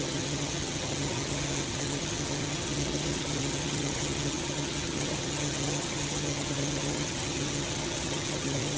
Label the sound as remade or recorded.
remade